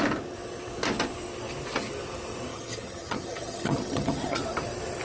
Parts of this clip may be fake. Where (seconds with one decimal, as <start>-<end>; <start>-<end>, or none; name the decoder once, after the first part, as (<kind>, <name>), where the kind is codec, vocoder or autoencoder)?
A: 2.5-4.4 (vocoder, HiFi-GAN)